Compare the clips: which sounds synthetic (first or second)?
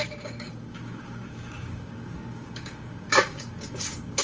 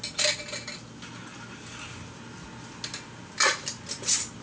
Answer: first